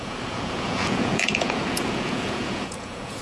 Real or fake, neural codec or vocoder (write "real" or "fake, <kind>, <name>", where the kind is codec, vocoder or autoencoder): fake, vocoder, Vocos